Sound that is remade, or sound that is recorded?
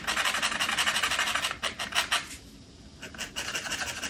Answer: recorded